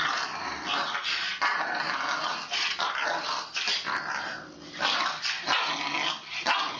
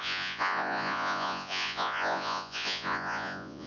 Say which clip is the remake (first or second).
second